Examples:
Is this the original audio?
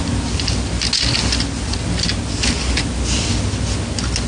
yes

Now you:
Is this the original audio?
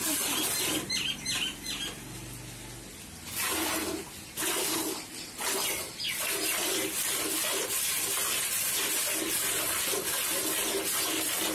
yes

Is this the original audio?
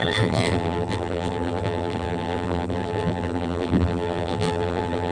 no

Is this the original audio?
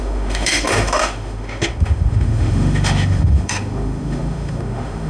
no